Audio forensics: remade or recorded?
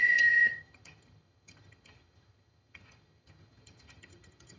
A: remade